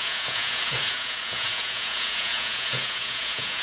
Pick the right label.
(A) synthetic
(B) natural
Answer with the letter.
A